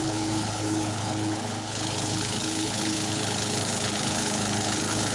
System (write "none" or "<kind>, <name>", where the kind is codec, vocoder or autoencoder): codec, HILCodec